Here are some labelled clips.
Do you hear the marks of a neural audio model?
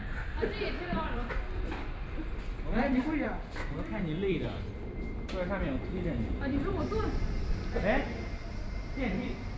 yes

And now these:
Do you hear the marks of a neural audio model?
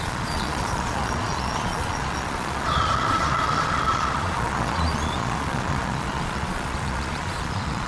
yes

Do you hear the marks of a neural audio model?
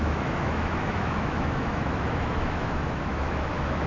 yes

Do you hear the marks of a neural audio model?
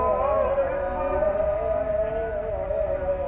no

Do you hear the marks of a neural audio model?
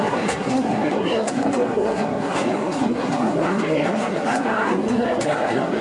yes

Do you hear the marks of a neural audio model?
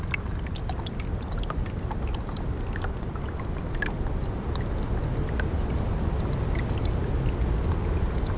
no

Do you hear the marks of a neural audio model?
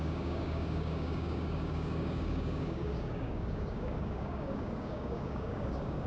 yes